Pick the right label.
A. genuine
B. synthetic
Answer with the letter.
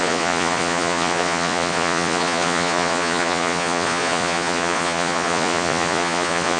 B